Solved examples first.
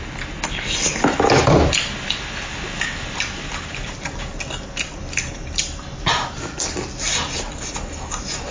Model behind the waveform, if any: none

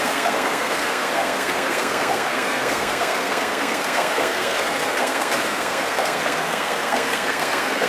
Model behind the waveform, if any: codec, SNAC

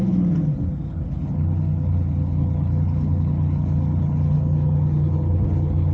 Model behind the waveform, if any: codec, HILCodec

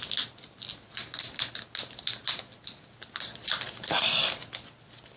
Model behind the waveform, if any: none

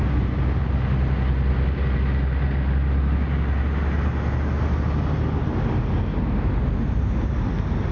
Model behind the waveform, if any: none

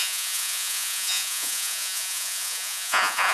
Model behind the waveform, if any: vocoder, Vocos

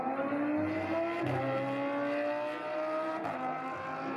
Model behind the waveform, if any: none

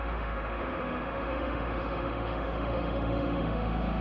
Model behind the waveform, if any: autoencoder, DAC-VAE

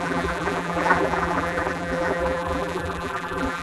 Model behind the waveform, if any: vocoder, BigVGAN v2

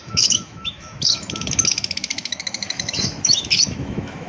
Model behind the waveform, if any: autoencoder, DAC-VAE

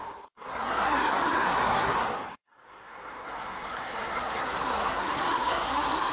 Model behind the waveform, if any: codec, SNAC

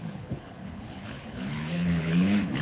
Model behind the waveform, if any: codec, HILCodec